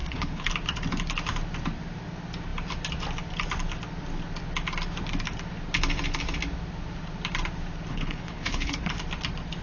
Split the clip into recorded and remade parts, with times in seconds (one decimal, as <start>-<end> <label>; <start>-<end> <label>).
0.0-0.5 remade; 0.5-7.9 recorded; 7.9-8.9 remade; 8.9-9.6 recorded